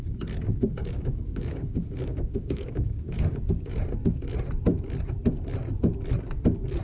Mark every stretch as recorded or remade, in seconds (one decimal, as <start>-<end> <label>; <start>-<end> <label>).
0.0-0.8 recorded; 0.8-3.7 remade; 3.7-6.8 recorded